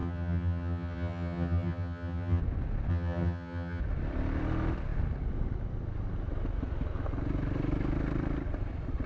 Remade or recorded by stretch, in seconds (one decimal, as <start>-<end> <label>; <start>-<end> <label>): 0.0-2.4 remade; 2.4-2.9 recorded; 2.9-3.8 remade; 3.8-9.1 recorded